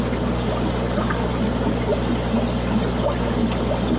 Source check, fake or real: real